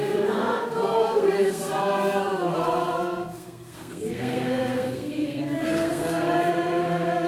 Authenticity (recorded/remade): remade